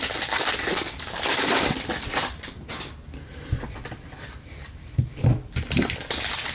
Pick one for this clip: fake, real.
fake